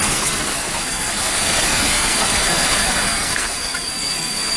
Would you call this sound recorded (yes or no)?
no